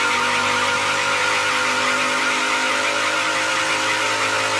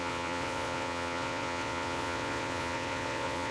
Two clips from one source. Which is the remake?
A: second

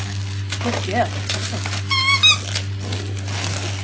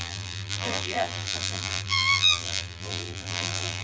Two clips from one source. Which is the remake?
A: second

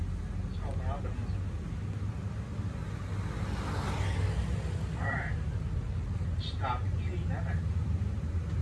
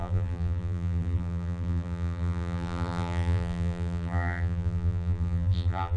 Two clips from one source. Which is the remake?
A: second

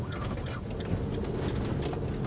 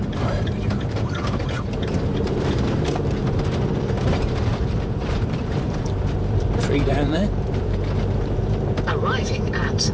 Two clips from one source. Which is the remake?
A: second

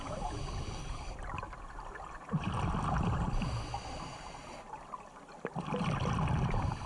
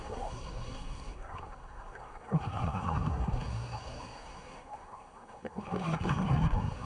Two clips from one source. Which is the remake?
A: second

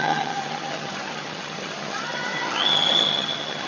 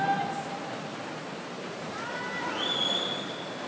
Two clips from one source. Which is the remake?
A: first